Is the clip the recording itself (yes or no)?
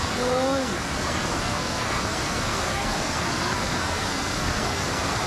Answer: no